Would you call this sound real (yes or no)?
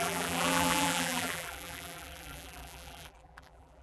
no